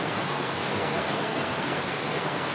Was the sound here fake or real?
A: fake